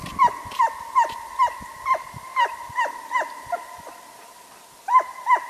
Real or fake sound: real